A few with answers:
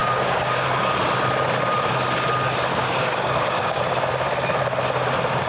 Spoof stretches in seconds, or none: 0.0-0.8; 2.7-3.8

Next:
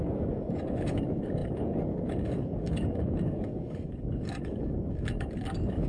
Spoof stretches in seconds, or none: 0.0-5.9